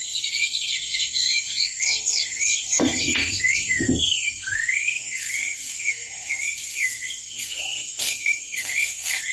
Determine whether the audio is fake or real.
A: fake